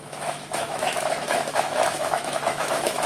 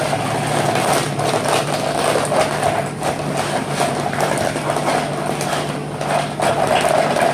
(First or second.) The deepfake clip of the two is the first